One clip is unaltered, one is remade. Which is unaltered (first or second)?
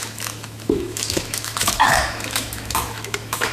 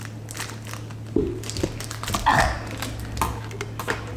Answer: second